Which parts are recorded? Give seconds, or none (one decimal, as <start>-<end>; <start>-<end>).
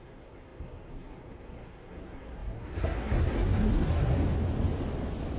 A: 4.2-5.4